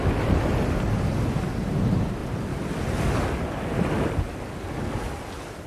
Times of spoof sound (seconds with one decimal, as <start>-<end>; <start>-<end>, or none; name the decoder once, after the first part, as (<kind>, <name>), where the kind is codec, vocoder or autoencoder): none